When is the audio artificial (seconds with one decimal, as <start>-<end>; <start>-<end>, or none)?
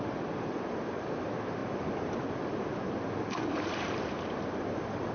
none